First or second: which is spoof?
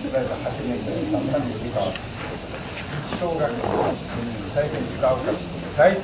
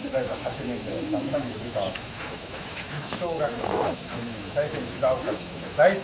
second